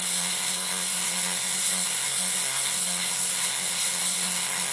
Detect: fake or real fake